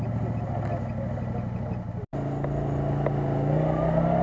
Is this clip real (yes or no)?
yes